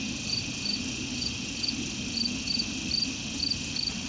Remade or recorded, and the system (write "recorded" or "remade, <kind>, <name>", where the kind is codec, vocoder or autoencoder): recorded